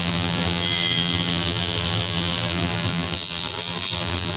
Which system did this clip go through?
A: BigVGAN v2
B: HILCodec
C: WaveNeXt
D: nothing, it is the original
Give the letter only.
A